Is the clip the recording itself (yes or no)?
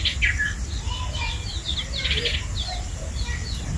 yes